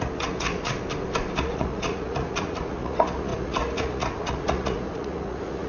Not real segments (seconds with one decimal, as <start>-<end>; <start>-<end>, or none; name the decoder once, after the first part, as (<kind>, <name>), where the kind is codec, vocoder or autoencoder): 0.0-0.7 (vocoder, Vocos); 1.4-5.7